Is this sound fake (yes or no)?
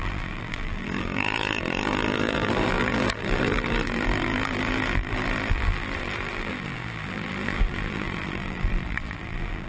yes